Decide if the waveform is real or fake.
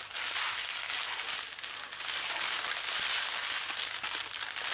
real